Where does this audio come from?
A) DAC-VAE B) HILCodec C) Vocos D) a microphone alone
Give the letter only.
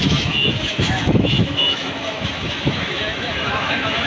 A